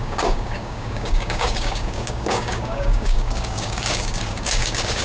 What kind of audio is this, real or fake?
fake